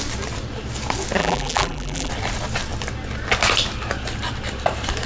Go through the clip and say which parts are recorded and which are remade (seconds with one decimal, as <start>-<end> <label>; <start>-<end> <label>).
0.0-1.2 recorded; 1.2-2.1 remade; 2.1-5.1 recorded